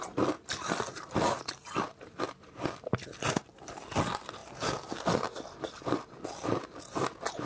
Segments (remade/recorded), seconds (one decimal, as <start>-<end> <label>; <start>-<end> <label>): 0.0-7.5 recorded